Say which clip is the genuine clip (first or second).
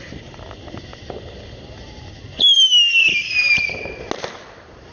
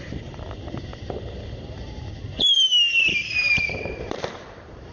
first